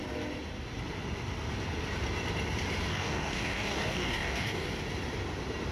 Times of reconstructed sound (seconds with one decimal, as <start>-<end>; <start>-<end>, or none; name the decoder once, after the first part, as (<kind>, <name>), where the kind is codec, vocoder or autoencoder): 2.9-4.7 (codec, DAC)